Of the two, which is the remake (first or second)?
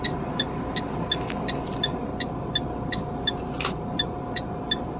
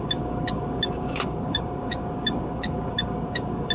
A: second